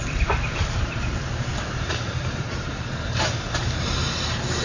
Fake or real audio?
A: fake